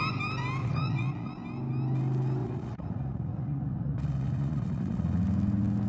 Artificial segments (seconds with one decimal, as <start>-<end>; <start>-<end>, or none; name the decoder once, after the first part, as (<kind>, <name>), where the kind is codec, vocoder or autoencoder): 0.6-1.3 (vocoder, Vocos); 2.4-5.2